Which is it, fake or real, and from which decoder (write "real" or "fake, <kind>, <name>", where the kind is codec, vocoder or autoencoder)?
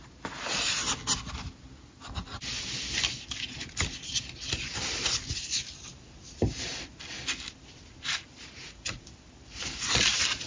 real